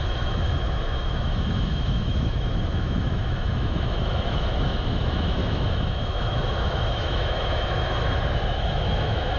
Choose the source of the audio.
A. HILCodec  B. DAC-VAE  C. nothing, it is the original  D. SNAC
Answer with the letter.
B